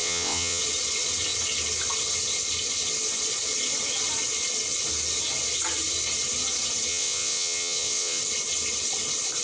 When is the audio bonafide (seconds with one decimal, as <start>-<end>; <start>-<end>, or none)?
0.6-6.9; 8.2-9.4